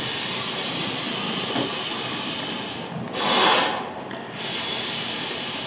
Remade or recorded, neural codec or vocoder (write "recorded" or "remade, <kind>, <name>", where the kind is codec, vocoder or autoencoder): recorded